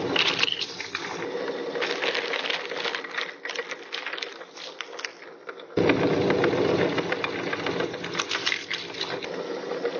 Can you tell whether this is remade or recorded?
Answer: recorded